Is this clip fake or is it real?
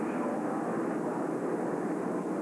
real